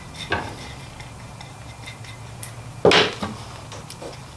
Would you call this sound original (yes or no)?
yes